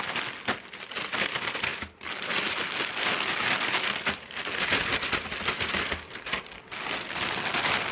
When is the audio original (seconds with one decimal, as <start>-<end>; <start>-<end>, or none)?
0.0-7.9